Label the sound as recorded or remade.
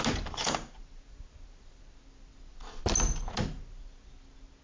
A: recorded